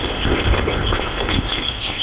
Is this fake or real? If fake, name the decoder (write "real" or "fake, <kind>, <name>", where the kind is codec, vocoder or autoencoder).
fake, codec, ZipCodec